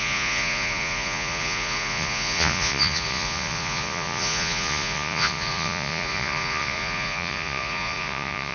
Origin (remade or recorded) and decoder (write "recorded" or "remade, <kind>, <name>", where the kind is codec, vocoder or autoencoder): remade, vocoder, Vocos